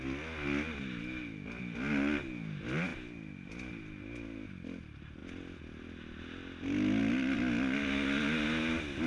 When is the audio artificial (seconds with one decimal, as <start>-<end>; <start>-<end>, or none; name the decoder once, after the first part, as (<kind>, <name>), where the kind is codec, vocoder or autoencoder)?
none